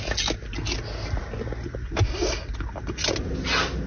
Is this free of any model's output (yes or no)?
yes